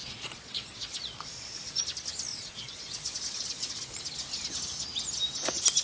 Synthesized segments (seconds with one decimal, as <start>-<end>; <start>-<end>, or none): 0.0-1.8; 2.3-4.0